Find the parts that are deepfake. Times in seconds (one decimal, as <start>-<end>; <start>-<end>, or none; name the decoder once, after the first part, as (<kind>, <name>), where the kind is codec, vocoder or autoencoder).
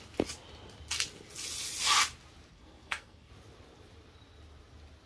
2.5-3.3 (codec, SNAC)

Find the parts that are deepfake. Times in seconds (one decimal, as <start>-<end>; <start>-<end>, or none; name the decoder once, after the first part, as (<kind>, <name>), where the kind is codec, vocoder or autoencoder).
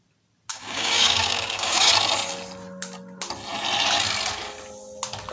0.5-1.9 (codec, DAC)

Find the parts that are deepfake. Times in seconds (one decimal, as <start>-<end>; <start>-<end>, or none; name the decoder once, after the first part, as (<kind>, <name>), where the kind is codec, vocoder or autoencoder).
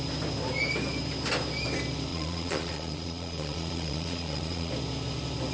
2.1-4.7 (vocoder, Vocos)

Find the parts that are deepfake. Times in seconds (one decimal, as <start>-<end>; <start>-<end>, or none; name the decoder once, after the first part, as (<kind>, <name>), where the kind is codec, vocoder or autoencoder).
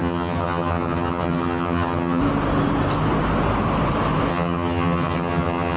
0.0-2.2 (vocoder, HiFi-GAN); 4.3-5.8